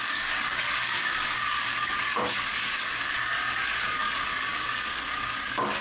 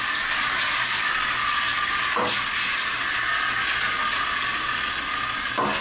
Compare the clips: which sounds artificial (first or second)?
first